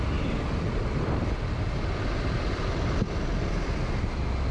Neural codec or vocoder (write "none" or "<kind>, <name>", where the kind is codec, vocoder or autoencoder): none